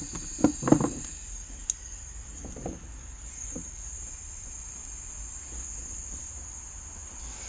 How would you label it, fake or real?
real